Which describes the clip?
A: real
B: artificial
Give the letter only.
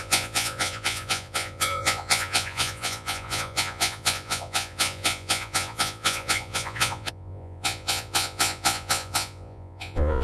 B